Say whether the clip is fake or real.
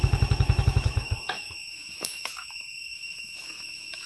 fake